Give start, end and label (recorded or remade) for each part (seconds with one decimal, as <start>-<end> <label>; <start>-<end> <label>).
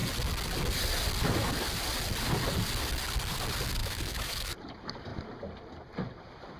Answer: 0.0-3.8 recorded; 3.8-4.5 remade; 4.5-6.6 recorded